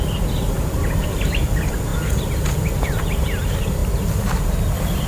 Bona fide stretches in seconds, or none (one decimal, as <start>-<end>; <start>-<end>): 0.0-5.1